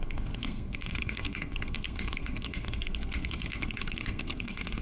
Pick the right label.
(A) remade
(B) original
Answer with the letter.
A